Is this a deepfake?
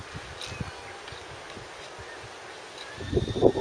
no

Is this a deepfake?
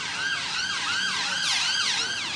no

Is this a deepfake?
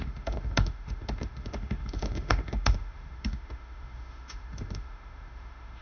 yes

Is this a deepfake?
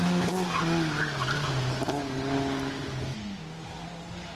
no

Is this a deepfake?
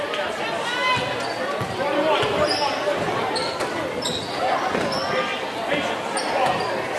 no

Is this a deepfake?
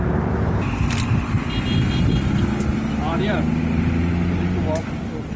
no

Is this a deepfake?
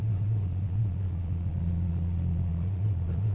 yes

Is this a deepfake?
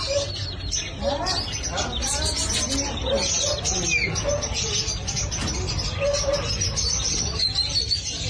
no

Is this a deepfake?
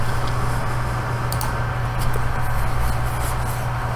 no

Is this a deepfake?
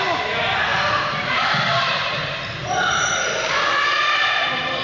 no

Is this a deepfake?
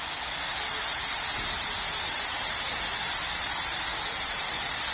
no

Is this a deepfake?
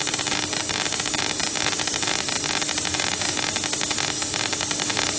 no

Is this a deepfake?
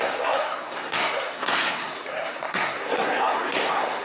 yes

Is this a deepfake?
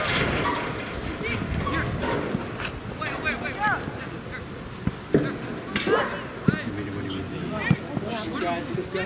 no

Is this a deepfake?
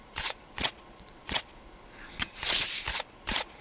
yes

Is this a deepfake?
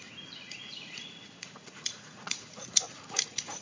yes